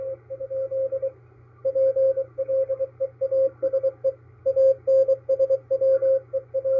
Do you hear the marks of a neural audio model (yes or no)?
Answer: no